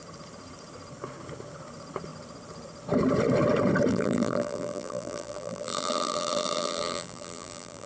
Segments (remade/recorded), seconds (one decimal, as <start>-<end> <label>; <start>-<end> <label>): 0.0-3.9 recorded; 3.9-7.9 remade